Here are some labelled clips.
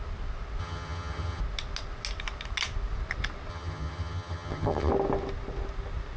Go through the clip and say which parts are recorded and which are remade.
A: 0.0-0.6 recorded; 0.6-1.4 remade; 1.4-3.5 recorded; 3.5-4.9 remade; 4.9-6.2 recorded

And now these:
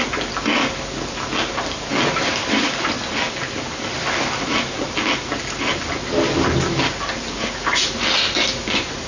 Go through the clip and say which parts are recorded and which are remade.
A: 0.0-9.1 recorded

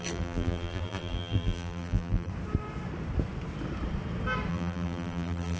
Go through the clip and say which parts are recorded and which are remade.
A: 0.0-2.3 remade; 2.3-4.5 recorded; 4.5-5.6 remade

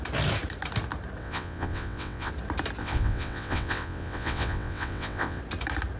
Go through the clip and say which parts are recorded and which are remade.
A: 0.0-1.2 recorded; 1.2-2.3 remade; 2.3-2.8 recorded; 2.8-5.4 remade; 5.4-6.0 recorded

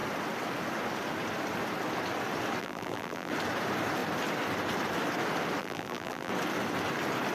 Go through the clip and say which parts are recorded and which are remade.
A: 0.0-2.6 recorded; 2.6-3.3 remade; 3.3-5.6 recorded; 5.6-6.3 remade; 6.3-7.3 recorded

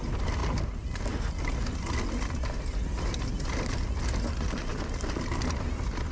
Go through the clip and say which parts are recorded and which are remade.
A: 0.0-6.1 recorded

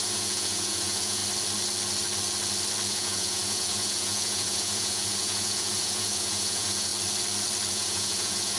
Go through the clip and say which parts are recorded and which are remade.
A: 0.0-1.2 remade; 1.2-2.9 recorded; 2.9-6.9 remade; 6.9-7.7 recorded; 7.7-8.6 remade

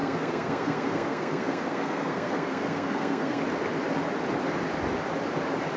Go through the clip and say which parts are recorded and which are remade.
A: 0.0-3.4 remade; 3.4-5.8 recorded